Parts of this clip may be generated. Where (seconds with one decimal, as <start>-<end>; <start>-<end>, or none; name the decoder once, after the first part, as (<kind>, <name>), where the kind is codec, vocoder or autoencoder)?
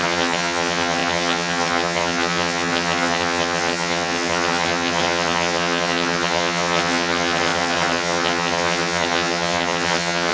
0.0-10.3 (vocoder, HiFi-GAN)